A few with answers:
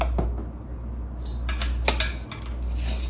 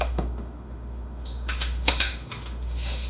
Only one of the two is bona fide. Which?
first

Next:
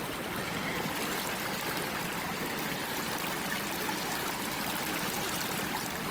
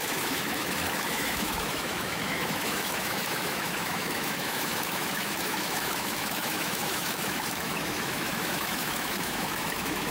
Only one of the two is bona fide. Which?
first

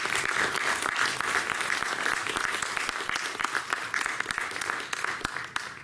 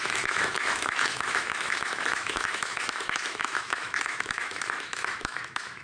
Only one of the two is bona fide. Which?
first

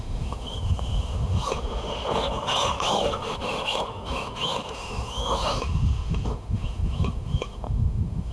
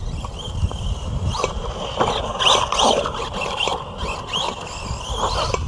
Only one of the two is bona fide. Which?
second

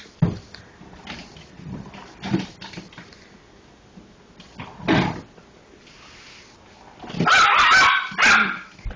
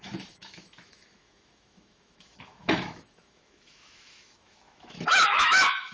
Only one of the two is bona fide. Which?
first